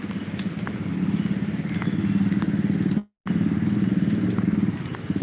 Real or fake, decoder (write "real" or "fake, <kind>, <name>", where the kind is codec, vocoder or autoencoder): real